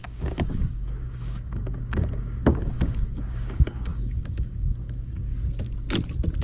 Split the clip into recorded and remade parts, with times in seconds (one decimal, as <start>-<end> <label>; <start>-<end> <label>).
0.0-5.3 remade; 5.3-6.4 recorded